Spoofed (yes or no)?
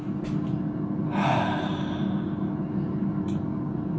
no